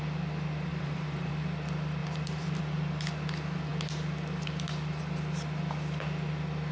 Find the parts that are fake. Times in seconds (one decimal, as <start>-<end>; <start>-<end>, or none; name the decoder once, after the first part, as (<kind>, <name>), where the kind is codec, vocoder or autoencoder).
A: 0.7-1.3 (vocoder, BigVGAN v2); 2.0-2.6